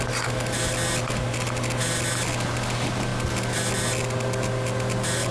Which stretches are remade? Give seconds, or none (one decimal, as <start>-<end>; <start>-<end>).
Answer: none